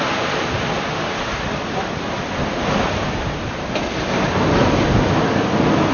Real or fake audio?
fake